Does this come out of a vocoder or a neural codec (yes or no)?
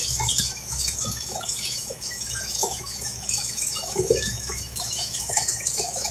yes